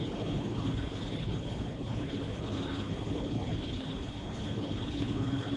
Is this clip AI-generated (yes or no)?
yes